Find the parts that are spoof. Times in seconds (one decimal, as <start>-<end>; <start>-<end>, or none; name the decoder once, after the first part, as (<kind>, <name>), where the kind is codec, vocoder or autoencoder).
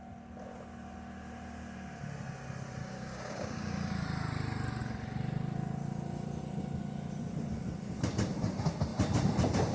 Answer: 2.8-3.8 (codec, DAC)